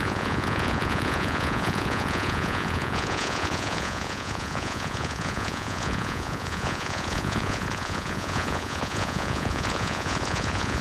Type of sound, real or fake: fake